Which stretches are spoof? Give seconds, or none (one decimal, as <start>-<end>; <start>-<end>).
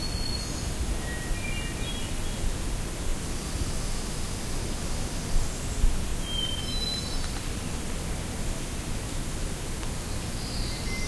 3.1-5.5; 6.1-7.9